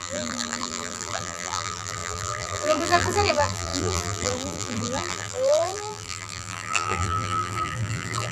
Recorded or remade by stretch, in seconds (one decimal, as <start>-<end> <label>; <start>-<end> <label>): 0.0-8.3 remade